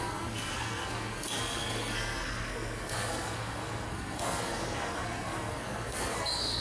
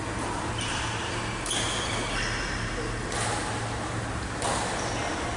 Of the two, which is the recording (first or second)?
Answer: second